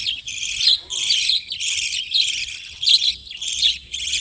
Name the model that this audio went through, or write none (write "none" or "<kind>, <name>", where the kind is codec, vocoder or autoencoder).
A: none